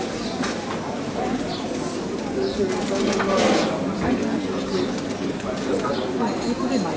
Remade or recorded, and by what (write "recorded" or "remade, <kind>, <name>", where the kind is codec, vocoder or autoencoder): recorded